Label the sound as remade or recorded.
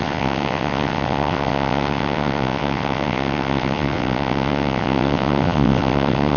remade